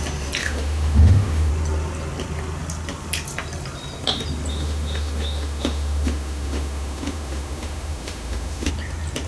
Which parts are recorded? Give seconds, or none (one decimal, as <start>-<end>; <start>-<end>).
0.0-0.4; 1.5-4.5; 8.7-9.3